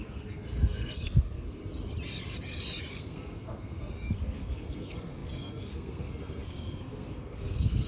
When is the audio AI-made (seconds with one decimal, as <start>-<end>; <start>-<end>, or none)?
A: 0.0-1.6; 2.9-7.9